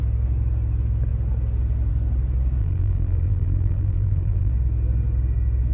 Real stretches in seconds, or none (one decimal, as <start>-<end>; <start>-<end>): 0.0-2.6; 4.5-5.7